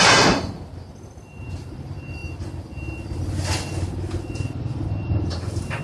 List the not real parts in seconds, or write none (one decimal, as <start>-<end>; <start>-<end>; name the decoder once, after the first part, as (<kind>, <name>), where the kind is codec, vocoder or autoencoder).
none

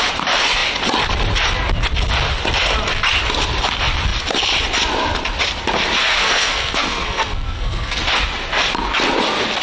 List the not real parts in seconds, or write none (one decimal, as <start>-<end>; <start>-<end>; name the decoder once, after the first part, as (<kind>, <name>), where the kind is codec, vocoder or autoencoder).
6.2-8.0 (codec, SNAC)